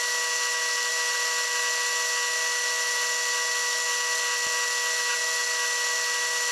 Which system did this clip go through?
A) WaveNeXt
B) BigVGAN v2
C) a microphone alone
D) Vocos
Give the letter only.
C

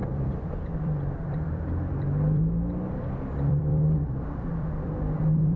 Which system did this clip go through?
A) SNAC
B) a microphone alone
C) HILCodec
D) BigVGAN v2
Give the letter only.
D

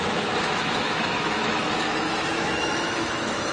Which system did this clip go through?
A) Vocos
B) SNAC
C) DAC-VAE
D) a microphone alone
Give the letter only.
C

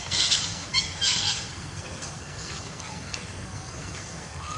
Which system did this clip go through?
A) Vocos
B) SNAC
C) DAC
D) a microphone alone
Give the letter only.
B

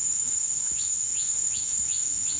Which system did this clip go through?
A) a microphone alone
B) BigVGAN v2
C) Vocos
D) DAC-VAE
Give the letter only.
D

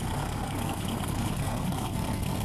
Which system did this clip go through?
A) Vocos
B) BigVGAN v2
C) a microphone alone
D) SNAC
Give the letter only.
D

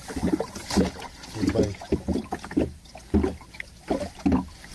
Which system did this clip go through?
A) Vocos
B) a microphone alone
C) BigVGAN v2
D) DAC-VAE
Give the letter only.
B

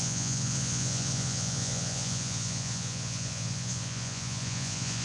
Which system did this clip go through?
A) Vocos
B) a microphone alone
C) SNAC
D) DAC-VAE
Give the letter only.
A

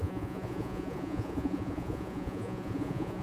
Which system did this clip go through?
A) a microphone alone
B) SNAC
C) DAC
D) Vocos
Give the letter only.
D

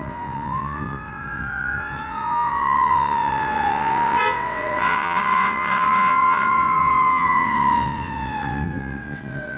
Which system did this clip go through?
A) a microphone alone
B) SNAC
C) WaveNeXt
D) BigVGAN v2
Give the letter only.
C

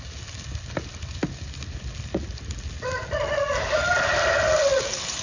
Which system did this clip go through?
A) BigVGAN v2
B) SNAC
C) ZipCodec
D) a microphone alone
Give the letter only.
D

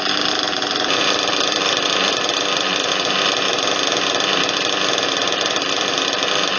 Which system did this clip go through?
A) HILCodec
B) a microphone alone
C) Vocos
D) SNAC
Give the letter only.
B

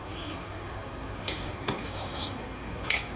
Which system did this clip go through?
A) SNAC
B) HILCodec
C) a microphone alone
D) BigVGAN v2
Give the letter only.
A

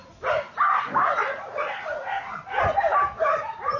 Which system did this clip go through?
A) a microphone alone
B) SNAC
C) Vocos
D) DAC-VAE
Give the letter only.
A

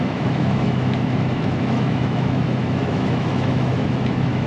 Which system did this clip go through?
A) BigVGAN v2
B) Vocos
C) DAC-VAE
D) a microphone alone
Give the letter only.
C